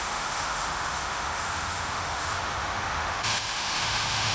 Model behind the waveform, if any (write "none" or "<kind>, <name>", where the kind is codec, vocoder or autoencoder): autoencoder, DAC-VAE